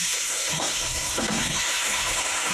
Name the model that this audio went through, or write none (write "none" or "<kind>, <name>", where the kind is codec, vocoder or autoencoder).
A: codec, SNAC